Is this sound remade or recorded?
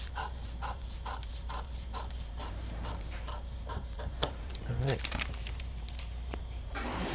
remade